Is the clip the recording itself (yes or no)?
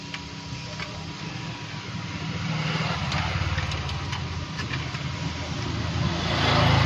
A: yes